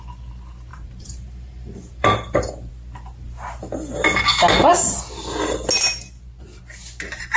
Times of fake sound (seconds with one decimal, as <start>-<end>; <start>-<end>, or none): 0.7-2.7